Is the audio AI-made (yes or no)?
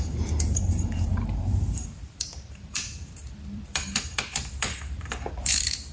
yes